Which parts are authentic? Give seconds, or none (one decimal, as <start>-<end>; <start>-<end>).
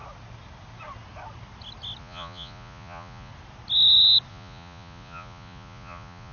0.0-2.0; 3.3-4.3